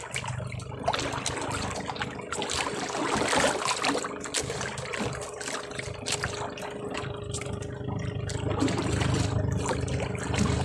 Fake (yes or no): no